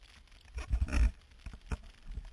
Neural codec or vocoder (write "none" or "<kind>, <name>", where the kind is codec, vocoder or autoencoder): vocoder, BigVGAN v2